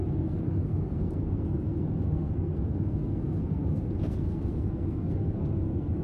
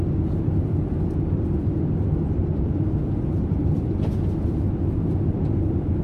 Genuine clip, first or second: second